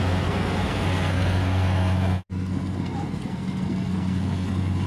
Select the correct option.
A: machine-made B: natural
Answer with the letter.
A